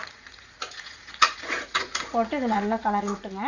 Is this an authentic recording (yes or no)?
no